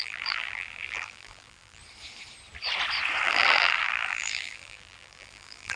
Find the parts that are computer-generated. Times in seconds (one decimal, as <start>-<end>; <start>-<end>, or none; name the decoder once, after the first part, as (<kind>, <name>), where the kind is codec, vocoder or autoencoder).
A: 0.0-1.8 (vocoder, BigVGAN v2); 3.2-5.8